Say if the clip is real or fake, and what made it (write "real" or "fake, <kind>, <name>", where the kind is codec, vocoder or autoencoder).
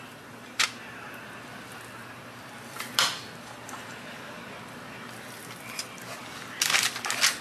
real